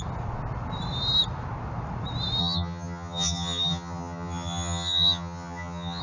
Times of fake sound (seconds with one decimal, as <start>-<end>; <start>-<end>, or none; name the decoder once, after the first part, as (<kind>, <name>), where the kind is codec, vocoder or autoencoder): 2.4-6.0 (vocoder, HiFi-GAN)

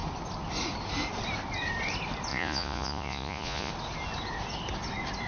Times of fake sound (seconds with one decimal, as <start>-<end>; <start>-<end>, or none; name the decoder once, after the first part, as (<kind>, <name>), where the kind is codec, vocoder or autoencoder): 2.3-3.7 (vocoder, Vocos)

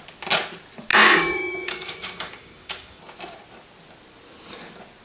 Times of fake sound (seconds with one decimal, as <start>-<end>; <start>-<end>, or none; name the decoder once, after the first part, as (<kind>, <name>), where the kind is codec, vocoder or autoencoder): 0.9-3.0 (codec, DAC)

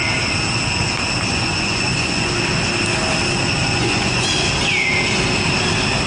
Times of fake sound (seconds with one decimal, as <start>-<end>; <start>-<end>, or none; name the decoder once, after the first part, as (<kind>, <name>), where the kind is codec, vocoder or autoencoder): 1.3-2.3 (vocoder, Vocos); 3.6-4.3

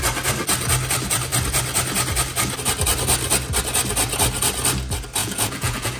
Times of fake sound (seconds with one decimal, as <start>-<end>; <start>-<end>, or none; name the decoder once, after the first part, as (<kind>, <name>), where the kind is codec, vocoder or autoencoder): 5.2-6.0 (vocoder, Vocos)